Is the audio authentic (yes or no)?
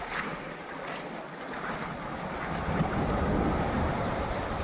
yes